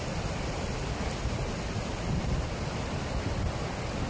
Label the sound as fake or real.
real